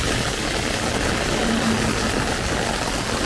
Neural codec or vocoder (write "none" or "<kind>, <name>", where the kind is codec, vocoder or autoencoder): none